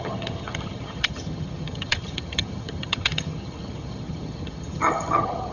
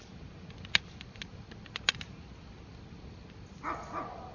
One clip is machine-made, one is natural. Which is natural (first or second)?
second